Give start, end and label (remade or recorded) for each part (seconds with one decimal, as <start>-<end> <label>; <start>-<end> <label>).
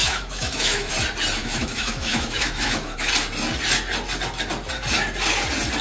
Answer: 0.0-0.9 remade; 0.9-1.4 recorded; 1.4-3.1 remade; 3.1-5.8 recorded